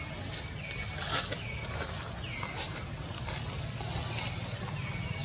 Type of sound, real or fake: real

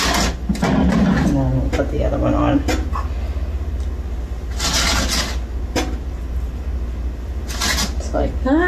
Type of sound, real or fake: real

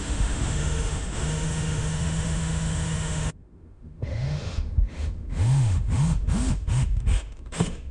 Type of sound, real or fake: fake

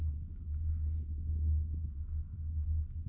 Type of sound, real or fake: real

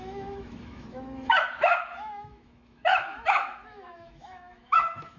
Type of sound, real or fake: fake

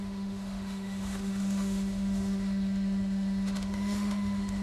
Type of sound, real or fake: fake